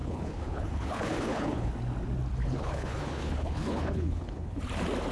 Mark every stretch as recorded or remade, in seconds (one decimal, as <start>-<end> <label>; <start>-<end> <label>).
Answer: 0.0-1.7 remade; 1.7-2.4 recorded; 2.4-4.6 remade; 4.6-5.1 recorded